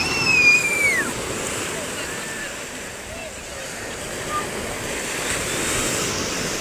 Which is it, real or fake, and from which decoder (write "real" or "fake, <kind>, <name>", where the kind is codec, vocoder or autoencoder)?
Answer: real